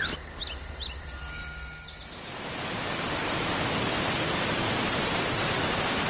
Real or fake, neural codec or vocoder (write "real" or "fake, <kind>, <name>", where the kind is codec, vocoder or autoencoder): real